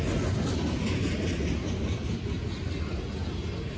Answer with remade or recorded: recorded